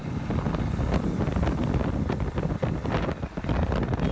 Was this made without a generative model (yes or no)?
yes